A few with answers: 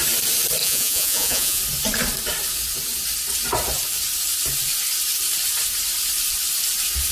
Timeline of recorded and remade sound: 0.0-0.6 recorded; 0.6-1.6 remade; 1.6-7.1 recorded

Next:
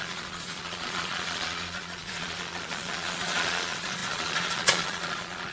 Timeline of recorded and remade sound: 0.0-5.5 remade

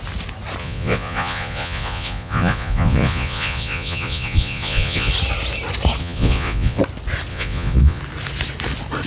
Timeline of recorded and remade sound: 0.0-0.6 recorded; 0.6-5.1 remade; 5.1-6.0 recorded; 6.0-6.8 remade; 6.8-7.3 recorded; 7.3-8.0 remade; 8.0-9.1 recorded

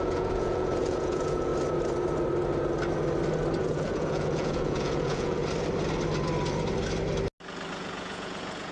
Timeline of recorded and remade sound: 0.0-1.5 remade; 1.5-3.6 recorded; 3.6-5.4 remade; 5.4-7.7 recorded; 7.7-8.7 remade

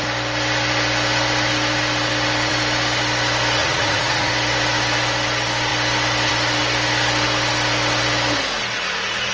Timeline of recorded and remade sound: 0.0-3.6 recorded; 3.6-4.3 remade; 4.3-9.3 recorded

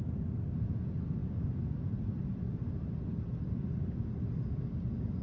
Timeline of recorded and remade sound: 0.0-5.2 recorded

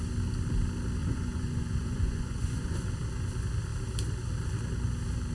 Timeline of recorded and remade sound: 0.0-1.0 recorded; 1.0-2.8 remade; 2.8-5.3 recorded

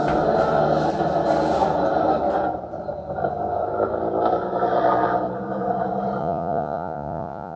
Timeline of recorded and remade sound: 0.0-6.2 recorded; 6.2-7.6 remade